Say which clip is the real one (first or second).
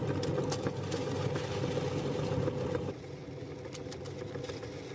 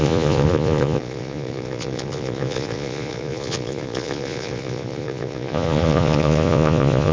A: first